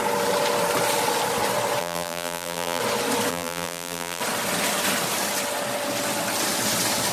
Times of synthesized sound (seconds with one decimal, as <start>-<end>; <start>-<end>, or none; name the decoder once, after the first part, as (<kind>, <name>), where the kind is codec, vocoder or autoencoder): 1.8-2.8 (vocoder, BigVGAN v2); 3.3-4.2